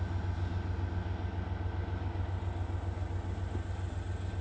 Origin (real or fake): real